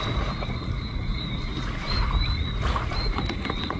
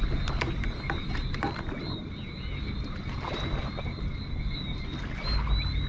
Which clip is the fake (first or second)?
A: first